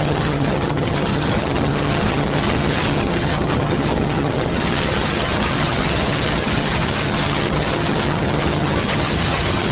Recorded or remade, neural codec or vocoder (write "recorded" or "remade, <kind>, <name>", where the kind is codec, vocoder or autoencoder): remade, vocoder, HiFi-GAN